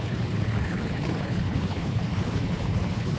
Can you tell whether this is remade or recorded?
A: remade